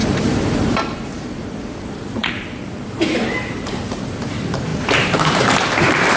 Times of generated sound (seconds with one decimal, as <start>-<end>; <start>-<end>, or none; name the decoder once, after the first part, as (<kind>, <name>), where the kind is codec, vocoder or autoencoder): 0.0-6.2 (vocoder, BigVGAN v2)